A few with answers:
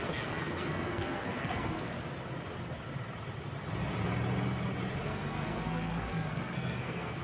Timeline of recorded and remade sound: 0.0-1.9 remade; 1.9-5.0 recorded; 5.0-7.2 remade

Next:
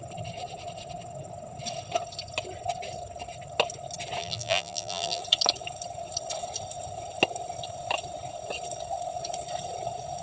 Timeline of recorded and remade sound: 0.0-4.2 recorded; 4.2-5.2 remade; 5.2-10.2 recorded

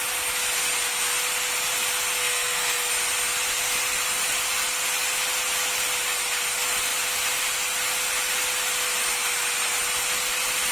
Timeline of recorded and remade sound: 0.0-2.2 recorded; 2.2-2.9 remade; 2.9-10.7 recorded

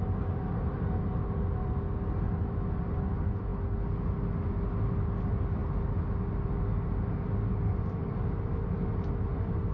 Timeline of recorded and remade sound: 0.0-9.7 recorded

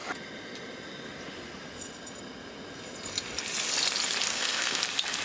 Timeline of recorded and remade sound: 0.0-4.3 recorded; 4.3-4.8 remade; 4.8-5.2 recorded

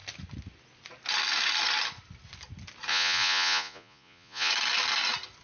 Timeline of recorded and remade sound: 0.0-2.9 recorded; 2.9-4.5 remade; 4.5-5.4 recorded